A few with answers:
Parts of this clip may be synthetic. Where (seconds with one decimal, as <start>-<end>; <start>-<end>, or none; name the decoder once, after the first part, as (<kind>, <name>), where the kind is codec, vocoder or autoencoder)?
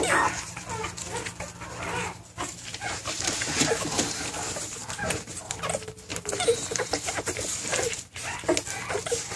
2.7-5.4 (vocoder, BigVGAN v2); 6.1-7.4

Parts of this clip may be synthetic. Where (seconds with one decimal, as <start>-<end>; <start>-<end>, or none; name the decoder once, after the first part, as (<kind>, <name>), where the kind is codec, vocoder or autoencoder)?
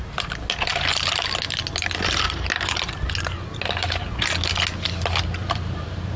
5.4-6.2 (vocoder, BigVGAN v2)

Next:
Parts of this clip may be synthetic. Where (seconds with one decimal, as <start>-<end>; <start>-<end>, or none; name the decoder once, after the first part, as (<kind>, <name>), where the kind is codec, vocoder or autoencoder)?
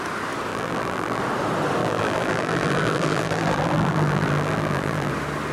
0.5-1.2 (vocoder, BigVGAN v2); 1.8-5.1